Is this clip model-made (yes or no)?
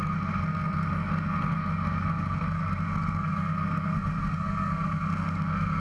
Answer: yes